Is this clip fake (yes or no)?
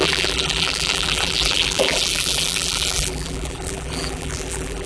yes